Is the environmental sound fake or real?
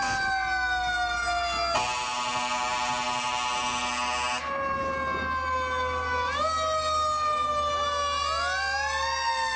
real